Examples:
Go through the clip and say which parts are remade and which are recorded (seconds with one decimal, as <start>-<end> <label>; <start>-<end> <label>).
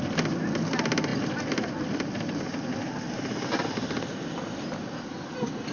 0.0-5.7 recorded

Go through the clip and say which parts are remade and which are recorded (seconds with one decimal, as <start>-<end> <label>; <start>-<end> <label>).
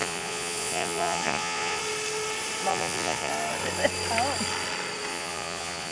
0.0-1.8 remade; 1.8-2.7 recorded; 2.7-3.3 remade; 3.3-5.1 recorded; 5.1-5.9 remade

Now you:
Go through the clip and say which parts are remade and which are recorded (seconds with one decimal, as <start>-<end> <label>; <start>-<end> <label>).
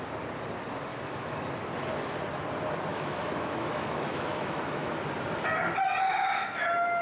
0.0-0.9 recorded; 0.9-1.5 remade; 1.5-2.9 recorded; 2.9-4.9 remade; 4.9-7.0 recorded